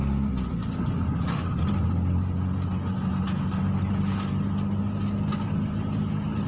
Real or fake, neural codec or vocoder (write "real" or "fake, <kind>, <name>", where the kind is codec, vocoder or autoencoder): real